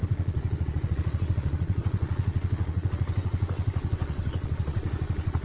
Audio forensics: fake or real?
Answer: fake